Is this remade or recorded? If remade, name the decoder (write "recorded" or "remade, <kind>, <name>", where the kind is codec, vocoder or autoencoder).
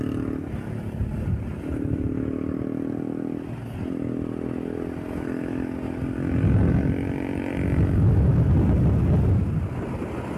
recorded